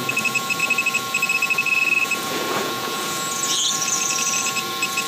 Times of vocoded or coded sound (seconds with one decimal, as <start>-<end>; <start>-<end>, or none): 0.0-5.1